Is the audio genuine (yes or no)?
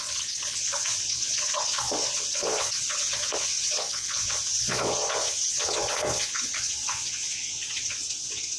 no